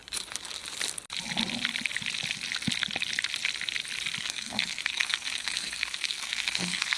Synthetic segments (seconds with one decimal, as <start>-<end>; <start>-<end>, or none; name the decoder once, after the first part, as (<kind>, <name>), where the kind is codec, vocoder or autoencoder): 4.2-7.0 (codec, SNAC)